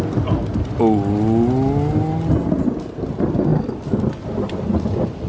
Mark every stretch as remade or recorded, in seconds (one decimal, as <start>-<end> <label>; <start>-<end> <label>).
0.0-5.3 recorded